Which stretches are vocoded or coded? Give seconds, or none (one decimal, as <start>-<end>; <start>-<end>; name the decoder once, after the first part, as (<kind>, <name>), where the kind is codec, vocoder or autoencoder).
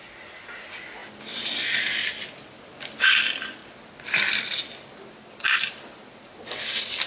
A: none